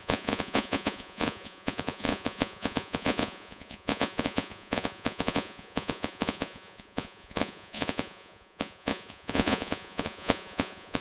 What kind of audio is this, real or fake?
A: fake